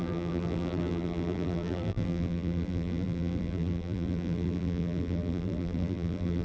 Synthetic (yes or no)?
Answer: yes